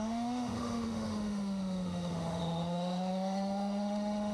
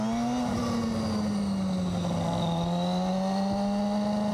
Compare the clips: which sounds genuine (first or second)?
second